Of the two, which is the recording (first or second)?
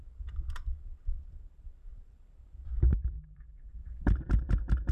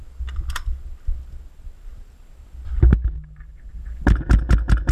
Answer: second